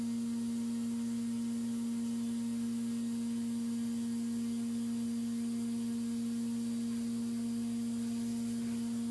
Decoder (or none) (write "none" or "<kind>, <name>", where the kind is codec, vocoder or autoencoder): none